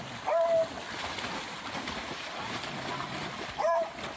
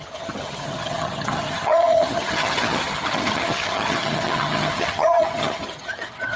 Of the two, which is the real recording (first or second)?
first